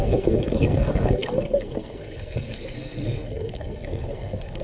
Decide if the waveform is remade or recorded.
remade